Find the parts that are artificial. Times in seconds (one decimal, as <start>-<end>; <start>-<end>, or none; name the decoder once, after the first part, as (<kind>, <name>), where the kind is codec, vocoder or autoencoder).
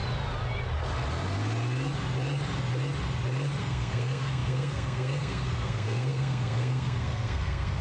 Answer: 3.6-7.8 (codec, SNAC)